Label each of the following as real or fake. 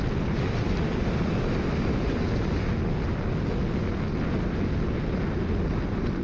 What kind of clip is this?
real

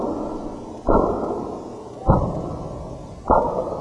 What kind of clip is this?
real